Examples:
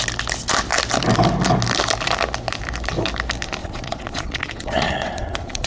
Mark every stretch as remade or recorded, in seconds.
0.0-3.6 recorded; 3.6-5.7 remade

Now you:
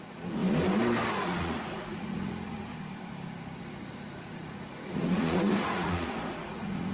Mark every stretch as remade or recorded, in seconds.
0.0-0.4 remade; 0.4-1.1 recorded; 1.1-2.7 remade; 2.7-3.6 recorded; 3.6-6.9 remade

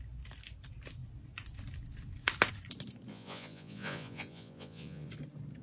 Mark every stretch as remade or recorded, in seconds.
0.0-3.1 recorded; 3.1-5.1 remade; 5.1-5.6 recorded

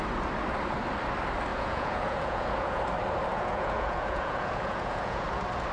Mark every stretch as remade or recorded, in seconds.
0.0-1.5 recorded; 1.5-2.8 remade; 2.8-3.3 recorded; 3.3-5.3 remade; 5.3-5.7 recorded

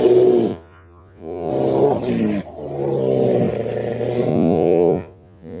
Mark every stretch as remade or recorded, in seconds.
0.0-0.5 recorded; 0.5-1.5 remade; 1.5-4.3 recorded; 4.3-5.6 remade